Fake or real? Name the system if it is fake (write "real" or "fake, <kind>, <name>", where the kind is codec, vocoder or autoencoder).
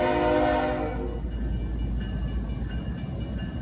real